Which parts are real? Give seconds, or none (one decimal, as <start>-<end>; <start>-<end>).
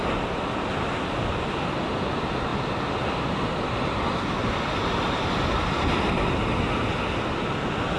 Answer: 0.0-8.0